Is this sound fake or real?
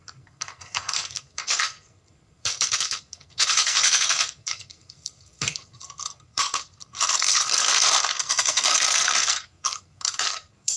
fake